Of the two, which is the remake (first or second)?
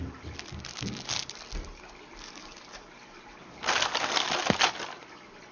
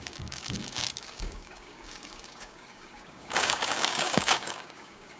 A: second